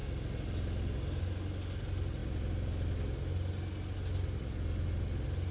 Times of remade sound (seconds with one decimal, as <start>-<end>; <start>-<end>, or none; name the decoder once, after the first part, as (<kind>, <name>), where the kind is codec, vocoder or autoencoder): none